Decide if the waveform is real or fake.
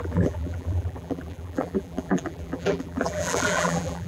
fake